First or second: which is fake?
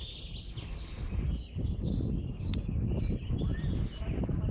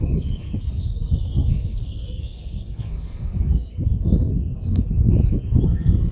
second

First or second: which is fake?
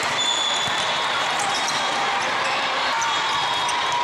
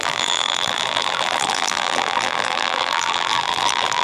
second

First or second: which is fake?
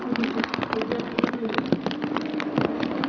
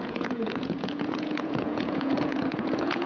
second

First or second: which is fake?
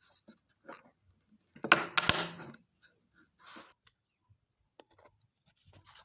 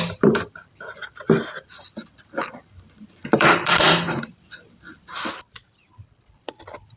second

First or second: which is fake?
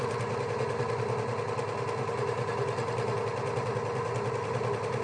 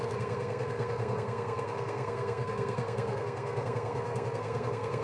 second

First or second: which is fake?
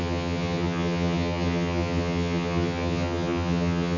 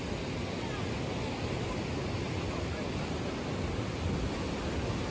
first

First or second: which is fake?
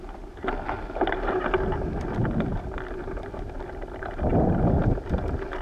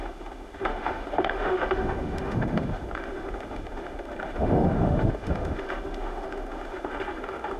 second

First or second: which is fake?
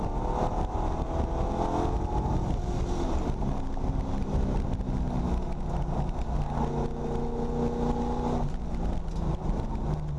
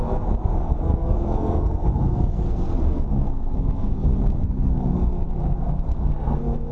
second